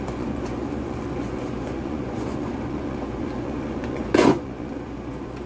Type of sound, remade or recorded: remade